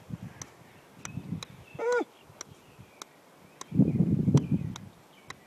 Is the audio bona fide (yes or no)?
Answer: yes